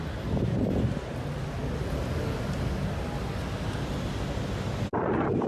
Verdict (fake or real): real